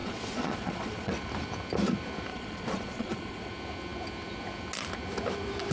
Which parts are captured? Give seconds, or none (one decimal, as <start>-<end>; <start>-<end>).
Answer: 1.1-2.3; 3.5-5.7